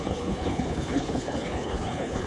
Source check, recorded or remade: remade